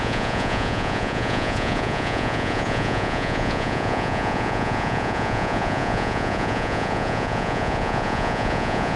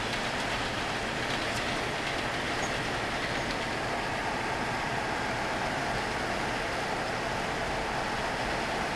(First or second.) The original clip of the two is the second